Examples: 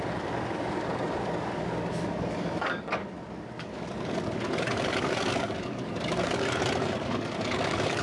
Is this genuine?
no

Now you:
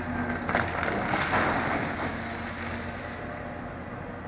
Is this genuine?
yes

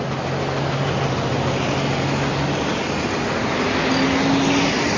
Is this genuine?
yes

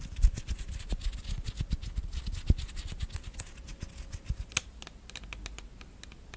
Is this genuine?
yes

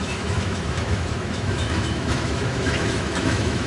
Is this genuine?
no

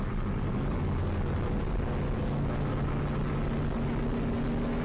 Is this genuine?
yes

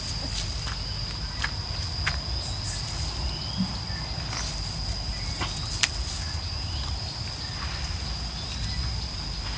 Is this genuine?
yes